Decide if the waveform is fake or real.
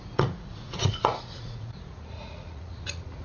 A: fake